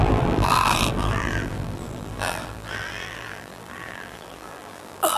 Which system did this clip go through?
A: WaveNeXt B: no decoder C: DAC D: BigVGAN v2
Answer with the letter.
D